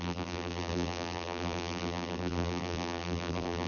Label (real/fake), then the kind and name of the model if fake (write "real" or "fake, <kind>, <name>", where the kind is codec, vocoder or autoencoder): fake, vocoder, BigVGAN v2